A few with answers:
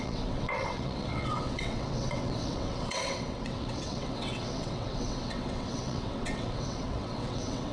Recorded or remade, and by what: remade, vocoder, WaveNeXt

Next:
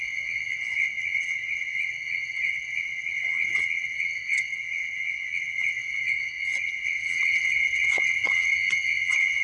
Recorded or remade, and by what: remade, vocoder, WaveNeXt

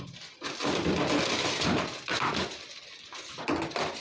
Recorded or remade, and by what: recorded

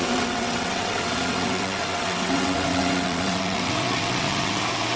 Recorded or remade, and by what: remade, vocoder, WaveNeXt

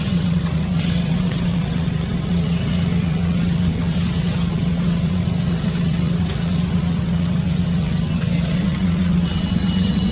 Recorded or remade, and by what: remade, vocoder, WaveNeXt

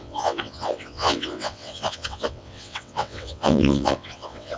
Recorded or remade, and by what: remade, vocoder, WaveNeXt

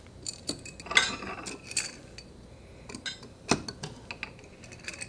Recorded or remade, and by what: recorded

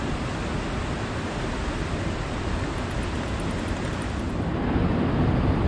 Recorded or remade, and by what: recorded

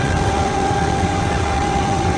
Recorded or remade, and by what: remade, vocoder, WaveNeXt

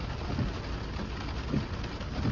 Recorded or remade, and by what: recorded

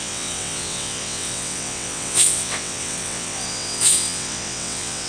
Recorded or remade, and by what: remade, vocoder, WaveNeXt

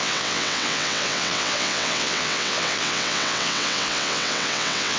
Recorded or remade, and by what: remade, vocoder, WaveNeXt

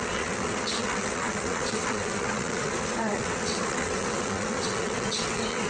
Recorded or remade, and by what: remade, vocoder, WaveNeXt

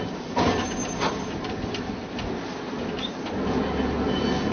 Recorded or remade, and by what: recorded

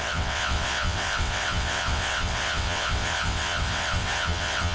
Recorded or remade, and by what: remade, vocoder, WaveNeXt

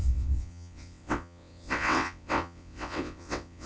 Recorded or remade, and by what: remade, vocoder, WaveNeXt